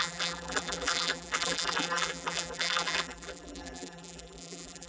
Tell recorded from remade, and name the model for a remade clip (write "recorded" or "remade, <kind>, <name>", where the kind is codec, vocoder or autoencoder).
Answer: remade, vocoder, BigVGAN v2